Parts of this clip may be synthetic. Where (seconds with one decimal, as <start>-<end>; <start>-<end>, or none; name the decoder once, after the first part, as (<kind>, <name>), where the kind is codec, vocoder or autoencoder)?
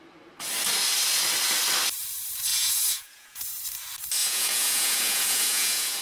2.5-3.5 (vocoder, Vocos); 4.2-6.0